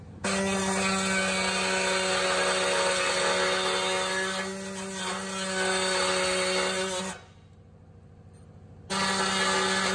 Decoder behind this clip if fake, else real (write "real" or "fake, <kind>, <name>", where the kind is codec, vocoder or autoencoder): real